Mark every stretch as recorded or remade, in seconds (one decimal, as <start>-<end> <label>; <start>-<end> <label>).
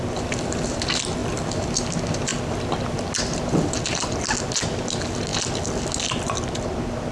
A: 0.0-7.1 recorded